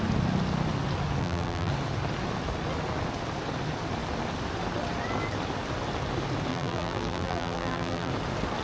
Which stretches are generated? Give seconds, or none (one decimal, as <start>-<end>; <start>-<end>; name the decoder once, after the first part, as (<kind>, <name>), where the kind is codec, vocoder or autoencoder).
1.2-1.7 (vocoder, BigVGAN v2); 6.5-8.1